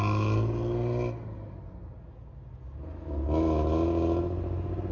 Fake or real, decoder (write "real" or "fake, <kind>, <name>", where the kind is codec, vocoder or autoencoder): real